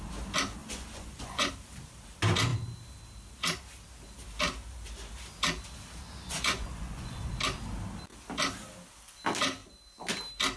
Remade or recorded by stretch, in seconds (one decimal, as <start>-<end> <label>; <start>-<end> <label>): 0.0-0.6 recorded; 0.6-1.5 remade; 1.5-6.3 recorded; 6.3-7.3 remade; 7.3-10.6 recorded